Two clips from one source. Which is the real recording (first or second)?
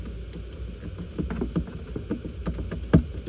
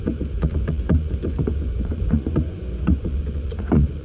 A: first